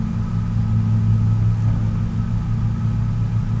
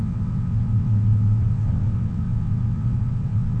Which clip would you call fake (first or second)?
second